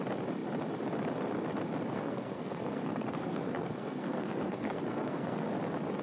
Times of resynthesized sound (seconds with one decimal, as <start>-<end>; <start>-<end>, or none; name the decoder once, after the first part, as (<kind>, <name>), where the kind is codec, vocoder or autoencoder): 1.9-5.5 (codec, SNAC)